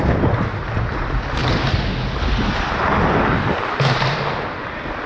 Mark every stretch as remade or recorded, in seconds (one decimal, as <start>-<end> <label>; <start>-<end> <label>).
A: 0.0-5.1 recorded